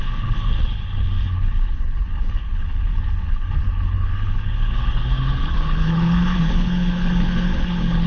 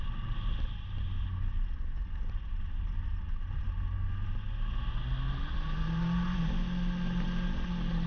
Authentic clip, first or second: second